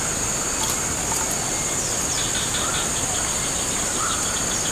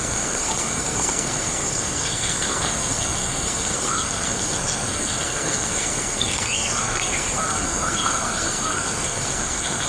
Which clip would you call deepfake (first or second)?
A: second